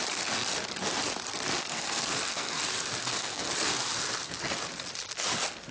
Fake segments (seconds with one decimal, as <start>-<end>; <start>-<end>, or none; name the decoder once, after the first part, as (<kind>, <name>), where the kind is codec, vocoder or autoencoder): 1.6-2.6 (codec, SNAC); 3.0-3.5